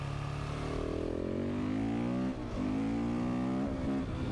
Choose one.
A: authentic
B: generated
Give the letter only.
A